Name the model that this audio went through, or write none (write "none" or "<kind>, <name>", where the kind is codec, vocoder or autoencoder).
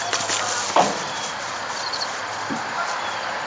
none